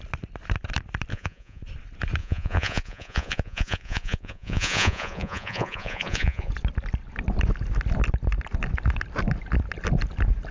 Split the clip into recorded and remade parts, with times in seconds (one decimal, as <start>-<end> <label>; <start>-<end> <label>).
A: 0.0-1.1 recorded; 1.1-1.6 remade; 1.6-2.2 recorded; 2.2-6.5 remade; 6.5-10.5 recorded